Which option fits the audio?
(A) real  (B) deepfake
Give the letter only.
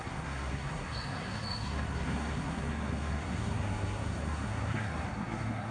B